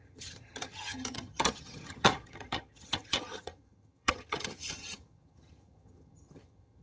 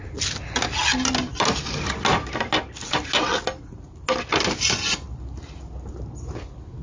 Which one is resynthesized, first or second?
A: first